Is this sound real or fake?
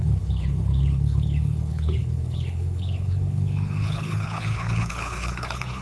fake